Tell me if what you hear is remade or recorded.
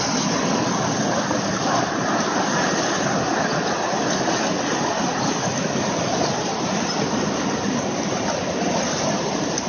recorded